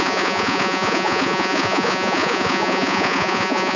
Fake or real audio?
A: fake